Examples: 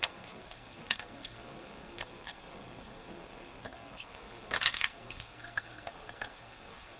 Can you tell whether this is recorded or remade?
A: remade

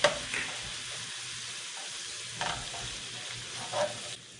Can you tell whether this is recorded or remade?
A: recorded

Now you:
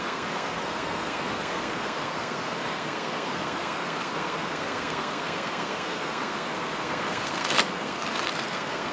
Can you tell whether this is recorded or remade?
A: remade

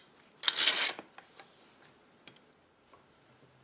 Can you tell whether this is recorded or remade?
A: recorded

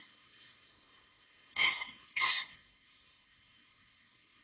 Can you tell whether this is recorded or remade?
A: remade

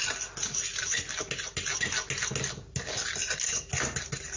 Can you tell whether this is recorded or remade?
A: recorded